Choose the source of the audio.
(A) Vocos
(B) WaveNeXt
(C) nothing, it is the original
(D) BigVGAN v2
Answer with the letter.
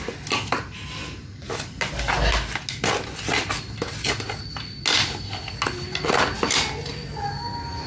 C